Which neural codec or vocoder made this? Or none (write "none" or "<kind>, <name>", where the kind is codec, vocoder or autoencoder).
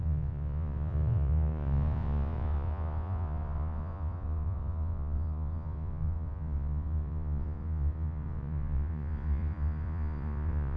vocoder, Vocos